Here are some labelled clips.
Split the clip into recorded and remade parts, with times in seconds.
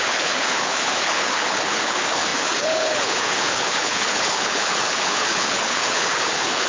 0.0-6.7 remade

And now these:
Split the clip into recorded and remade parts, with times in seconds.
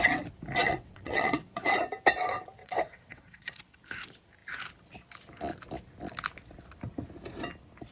0.0-0.6 recorded; 0.6-1.8 remade; 1.8-2.6 recorded; 2.6-3.6 remade; 3.6-7.9 recorded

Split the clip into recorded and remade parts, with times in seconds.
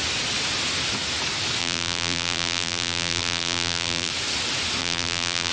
0.0-1.6 recorded; 1.6-4.1 remade; 4.1-4.8 recorded; 4.8-5.5 remade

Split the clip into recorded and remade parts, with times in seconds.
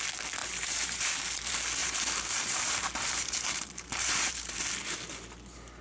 0.0-0.4 recorded; 0.4-1.1 remade; 1.1-1.8 recorded; 1.8-4.6 remade; 4.6-5.8 recorded